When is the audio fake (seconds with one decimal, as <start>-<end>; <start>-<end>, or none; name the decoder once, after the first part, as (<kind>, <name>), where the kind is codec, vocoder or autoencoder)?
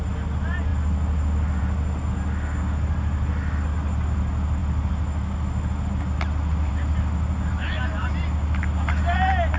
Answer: none